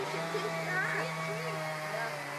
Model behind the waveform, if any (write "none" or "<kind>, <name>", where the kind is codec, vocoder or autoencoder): none